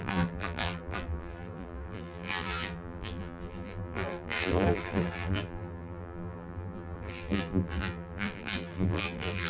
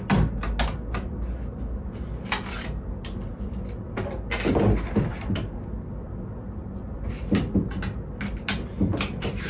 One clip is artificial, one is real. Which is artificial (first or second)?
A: first